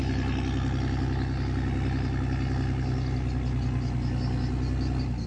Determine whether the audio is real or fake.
real